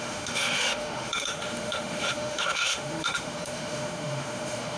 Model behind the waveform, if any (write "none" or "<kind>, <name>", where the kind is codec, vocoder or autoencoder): autoencoder, DAC-VAE